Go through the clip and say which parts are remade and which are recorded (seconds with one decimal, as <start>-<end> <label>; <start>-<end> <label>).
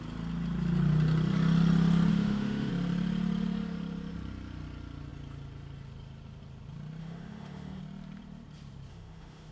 0.0-2.1 recorded; 2.1-2.7 remade; 2.7-7.0 recorded; 7.0-7.8 remade; 7.8-8.9 recorded; 8.9-9.5 remade